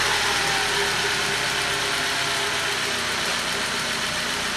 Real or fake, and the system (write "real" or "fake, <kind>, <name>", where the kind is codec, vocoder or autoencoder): real